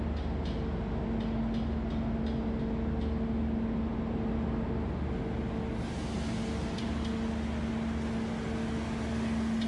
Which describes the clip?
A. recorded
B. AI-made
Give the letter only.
A